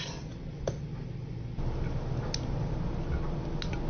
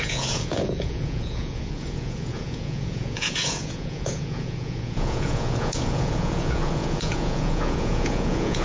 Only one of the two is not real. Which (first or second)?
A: second